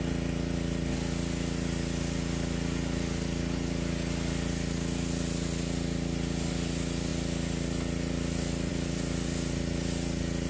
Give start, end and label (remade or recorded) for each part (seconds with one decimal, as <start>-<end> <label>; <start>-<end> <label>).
0.0-10.5 recorded